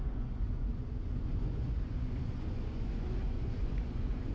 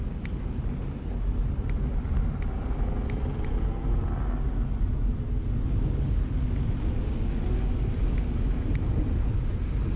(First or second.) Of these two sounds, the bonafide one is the second